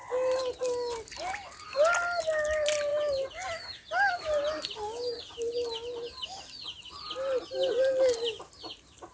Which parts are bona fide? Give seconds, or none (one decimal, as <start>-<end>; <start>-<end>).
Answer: 0.0-9.1